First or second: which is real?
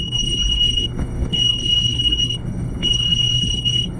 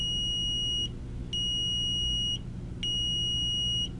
second